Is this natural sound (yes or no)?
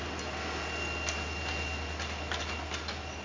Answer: yes